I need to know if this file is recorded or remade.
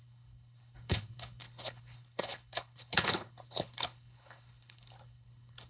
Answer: remade